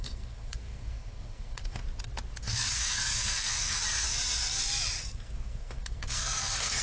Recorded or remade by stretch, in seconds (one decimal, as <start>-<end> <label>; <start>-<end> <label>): 0.0-1.8 remade; 1.8-2.4 recorded; 2.4-3.8 remade; 3.8-5.0 recorded; 5.0-6.8 remade